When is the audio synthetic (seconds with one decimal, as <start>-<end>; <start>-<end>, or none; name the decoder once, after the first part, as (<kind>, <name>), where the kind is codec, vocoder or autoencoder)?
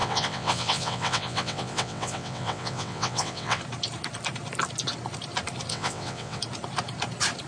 0.0-3.6 (vocoder, WaveNeXt); 5.7-6.4